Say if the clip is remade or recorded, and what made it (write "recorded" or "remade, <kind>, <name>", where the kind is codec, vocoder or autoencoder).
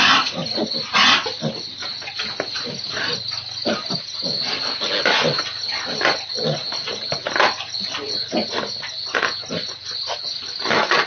recorded